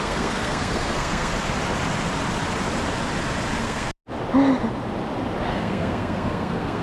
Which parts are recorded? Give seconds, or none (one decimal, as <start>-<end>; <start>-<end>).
1.3-3.6; 4.0-5.5